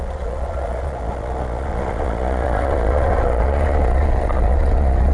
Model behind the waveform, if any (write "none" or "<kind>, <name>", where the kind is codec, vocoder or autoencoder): vocoder, Vocos